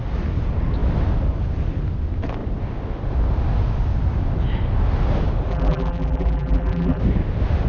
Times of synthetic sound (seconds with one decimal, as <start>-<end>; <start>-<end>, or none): 5.5-7.0